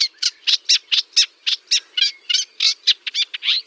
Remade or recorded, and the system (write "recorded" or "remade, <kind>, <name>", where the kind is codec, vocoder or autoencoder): recorded